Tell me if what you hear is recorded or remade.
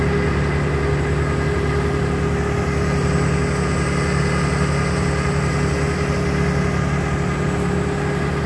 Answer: recorded